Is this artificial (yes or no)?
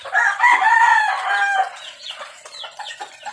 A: no